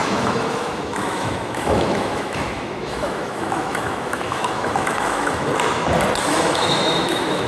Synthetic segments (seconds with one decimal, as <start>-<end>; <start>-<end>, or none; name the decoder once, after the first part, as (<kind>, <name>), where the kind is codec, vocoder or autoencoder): 0.0-5.5 (autoencoder, DAC-VAE); 6.2-7.5